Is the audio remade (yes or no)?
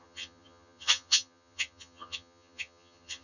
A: yes